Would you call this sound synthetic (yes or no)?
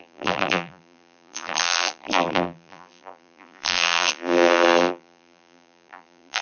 yes